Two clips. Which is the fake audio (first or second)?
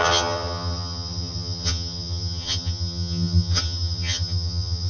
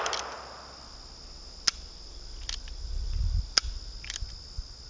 first